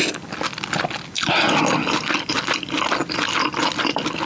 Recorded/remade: recorded